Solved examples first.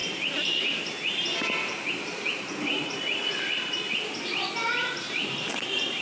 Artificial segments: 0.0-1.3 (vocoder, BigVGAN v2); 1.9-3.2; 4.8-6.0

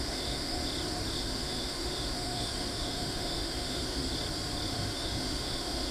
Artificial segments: 0.0-0.6 (autoencoder, DAC-VAE); 1.2-4.0; 4.7-5.9

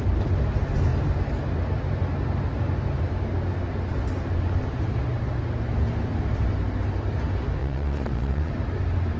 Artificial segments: 7.6-8.5 (vocoder, Vocos)

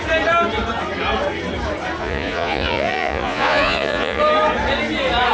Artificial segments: 2.0-4.2 (vocoder, Vocos)

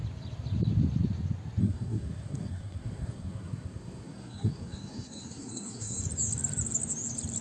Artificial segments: 1.6-6.0 (codec, SNAC)

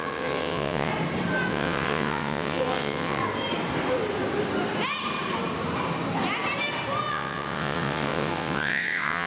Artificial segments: 0.0-0.9 (vocoder, WaveNeXt); 1.5-3.2; 7.1-9.3